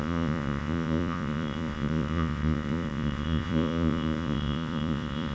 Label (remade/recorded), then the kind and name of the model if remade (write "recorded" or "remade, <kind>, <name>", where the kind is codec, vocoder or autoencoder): remade, vocoder, Vocos